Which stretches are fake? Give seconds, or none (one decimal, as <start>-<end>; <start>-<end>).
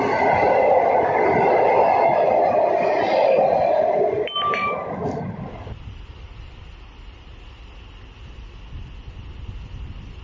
4.6-6.7